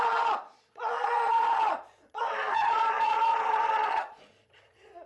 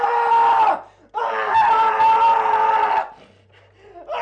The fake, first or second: first